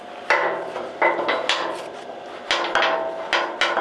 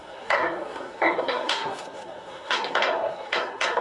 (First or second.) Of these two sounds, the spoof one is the second